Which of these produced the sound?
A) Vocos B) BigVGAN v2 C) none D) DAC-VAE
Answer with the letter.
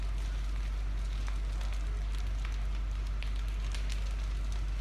C